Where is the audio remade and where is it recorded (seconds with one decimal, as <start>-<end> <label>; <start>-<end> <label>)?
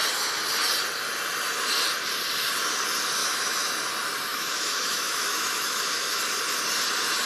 0.0-3.2 recorded; 3.2-3.7 remade; 3.7-4.3 recorded; 4.3-6.2 remade; 6.2-7.3 recorded